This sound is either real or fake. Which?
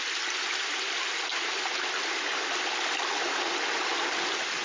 real